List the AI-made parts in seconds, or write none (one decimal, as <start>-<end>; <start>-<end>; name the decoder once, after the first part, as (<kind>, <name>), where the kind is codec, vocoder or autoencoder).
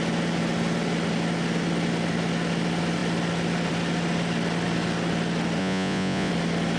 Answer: 5.6-6.3 (vocoder, Vocos)